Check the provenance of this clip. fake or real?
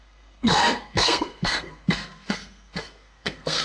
fake